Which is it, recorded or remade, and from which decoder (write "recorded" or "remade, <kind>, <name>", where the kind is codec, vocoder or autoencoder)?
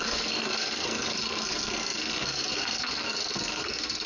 remade, codec, SNAC